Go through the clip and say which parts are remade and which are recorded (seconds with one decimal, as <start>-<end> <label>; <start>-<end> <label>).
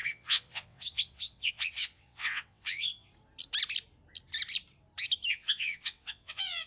0.0-3.1 remade; 3.1-5.3 recorded; 5.3-6.7 remade